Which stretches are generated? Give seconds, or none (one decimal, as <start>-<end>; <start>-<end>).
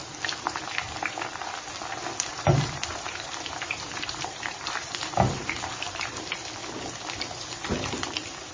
2.3-6.6; 7.8-8.5